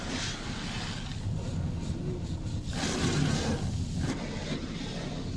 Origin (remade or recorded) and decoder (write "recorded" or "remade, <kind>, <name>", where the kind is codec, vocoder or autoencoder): recorded